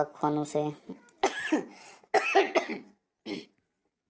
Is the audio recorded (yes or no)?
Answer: yes